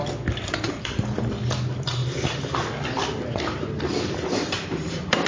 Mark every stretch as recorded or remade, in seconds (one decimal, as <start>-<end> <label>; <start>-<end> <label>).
0.0-2.0 recorded; 2.0-5.3 remade